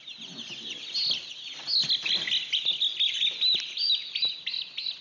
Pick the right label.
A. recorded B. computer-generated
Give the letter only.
A